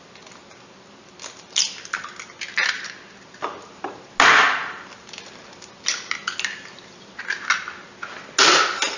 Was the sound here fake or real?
real